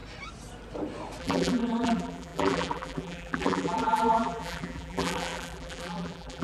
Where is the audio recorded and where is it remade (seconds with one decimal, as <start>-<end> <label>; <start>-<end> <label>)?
0.0-1.2 recorded; 1.2-6.4 remade